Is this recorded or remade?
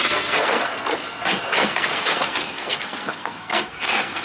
remade